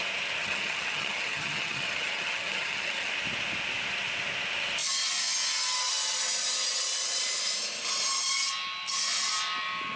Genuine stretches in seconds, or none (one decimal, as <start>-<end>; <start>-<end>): 0.0-0.4; 3.1-10.0